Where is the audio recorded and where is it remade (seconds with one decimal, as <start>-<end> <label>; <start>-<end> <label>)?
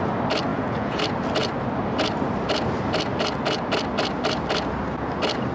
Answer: 0.0-0.5 recorded; 0.5-1.0 remade; 1.0-5.5 recorded